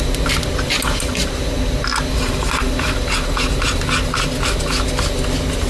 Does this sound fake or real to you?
real